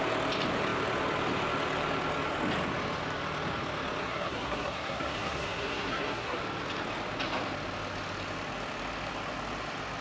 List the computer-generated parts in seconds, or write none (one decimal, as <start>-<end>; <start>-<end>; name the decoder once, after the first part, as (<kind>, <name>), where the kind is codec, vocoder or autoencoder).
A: 4.0-6.4 (codec, SNAC)